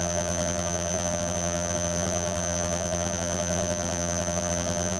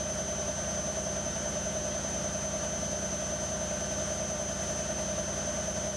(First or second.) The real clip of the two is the second